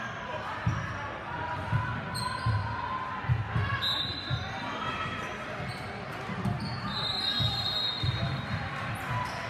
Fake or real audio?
real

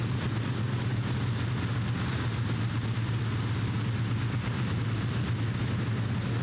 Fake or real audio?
real